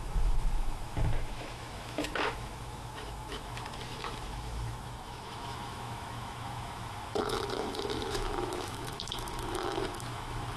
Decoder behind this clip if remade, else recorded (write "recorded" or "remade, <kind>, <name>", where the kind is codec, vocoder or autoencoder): remade, autoencoder, DAC-VAE